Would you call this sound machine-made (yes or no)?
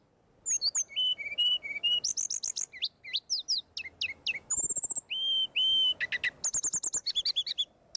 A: no